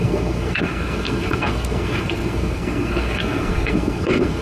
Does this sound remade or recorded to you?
remade